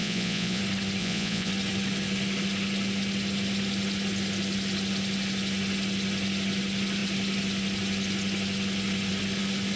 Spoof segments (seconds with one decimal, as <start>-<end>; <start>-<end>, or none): 0.0-0.6; 1.0-1.5

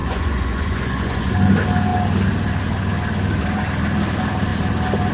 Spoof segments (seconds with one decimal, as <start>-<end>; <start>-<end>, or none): 0.0-1.3

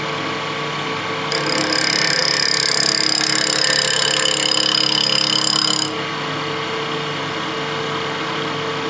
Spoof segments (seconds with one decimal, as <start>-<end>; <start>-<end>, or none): none